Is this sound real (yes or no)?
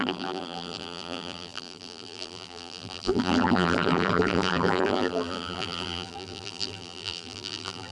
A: no